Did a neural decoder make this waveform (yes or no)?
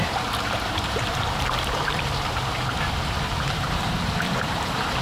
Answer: yes